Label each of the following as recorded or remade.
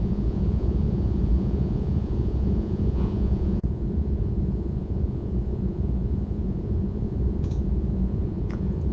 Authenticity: remade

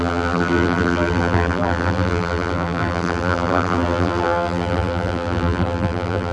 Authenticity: remade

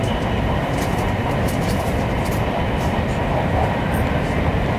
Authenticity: remade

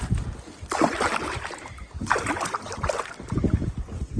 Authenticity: recorded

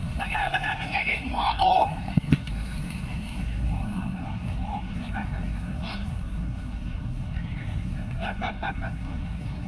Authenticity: remade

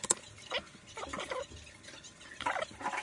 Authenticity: recorded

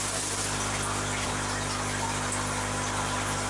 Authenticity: recorded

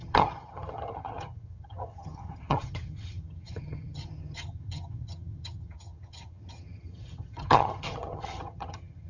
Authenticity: remade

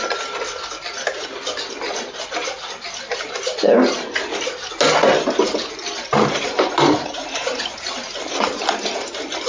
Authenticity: recorded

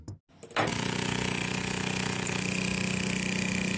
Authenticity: recorded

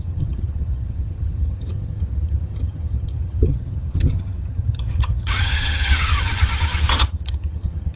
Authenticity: remade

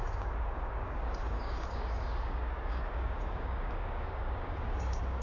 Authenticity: remade